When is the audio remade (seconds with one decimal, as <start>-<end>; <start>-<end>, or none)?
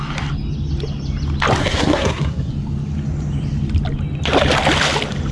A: 1.6-2.5